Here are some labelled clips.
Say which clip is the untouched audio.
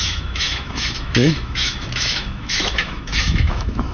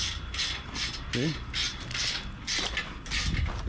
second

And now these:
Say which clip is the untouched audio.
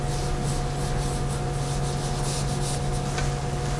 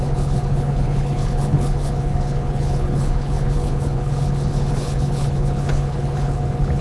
first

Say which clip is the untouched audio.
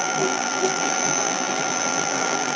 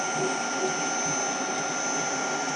second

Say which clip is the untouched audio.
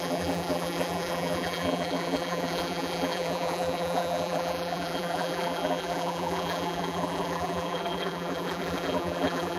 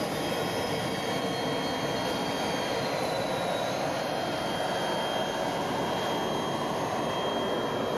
second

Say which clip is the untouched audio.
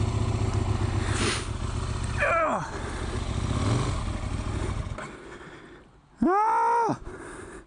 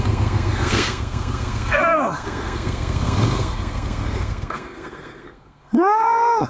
first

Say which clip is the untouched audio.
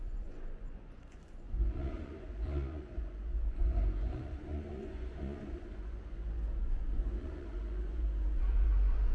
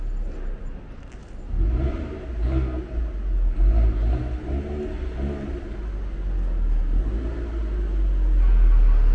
second